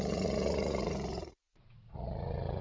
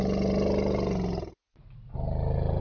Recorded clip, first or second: second